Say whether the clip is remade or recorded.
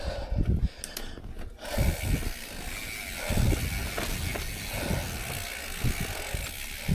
recorded